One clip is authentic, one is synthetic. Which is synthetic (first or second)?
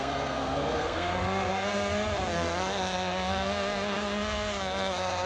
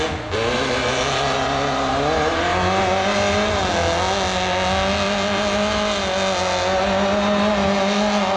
first